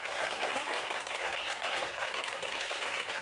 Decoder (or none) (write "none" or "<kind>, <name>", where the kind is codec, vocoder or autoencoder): codec, SNAC